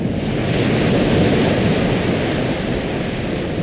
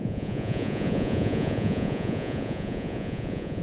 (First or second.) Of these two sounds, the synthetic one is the second